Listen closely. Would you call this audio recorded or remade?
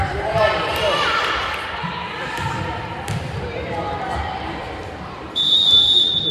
remade